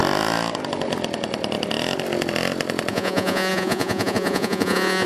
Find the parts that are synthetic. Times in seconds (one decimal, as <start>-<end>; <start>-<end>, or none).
2.9-5.1